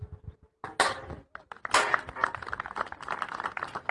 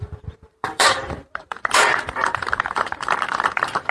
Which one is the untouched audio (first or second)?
first